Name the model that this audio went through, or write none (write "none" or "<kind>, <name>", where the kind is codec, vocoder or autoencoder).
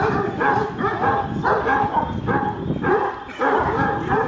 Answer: none